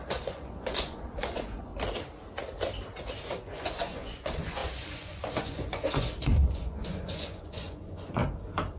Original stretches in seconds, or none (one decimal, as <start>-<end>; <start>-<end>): 1.7-3.4; 8.2-8.8

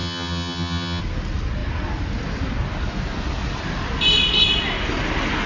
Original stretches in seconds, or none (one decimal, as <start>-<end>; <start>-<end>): 1.0-5.5

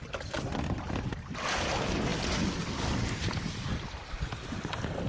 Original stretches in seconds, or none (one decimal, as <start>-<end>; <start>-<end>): 0.0-5.1

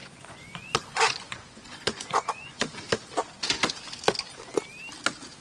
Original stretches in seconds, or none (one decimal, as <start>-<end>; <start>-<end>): 2.9-5.4

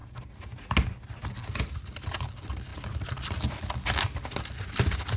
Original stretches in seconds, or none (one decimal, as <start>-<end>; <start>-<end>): 0.0-5.2